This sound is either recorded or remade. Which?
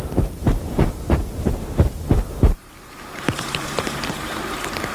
remade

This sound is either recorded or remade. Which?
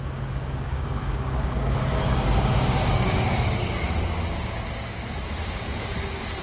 remade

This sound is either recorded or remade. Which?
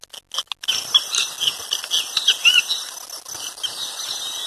recorded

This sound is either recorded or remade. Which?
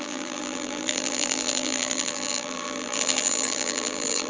remade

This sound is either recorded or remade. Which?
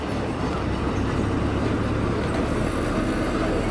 recorded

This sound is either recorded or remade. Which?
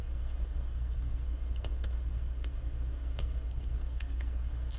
remade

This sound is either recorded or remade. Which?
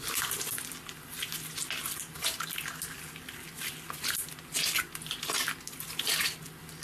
recorded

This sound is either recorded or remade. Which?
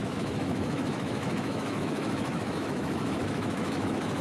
remade